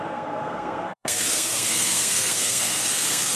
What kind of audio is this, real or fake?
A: fake